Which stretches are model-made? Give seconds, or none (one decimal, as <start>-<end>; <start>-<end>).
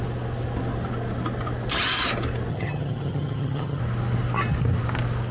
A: 2.5-3.8